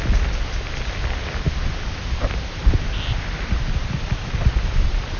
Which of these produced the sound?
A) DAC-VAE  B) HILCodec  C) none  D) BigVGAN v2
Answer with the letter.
C